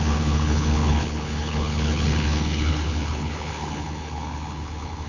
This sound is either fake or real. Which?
fake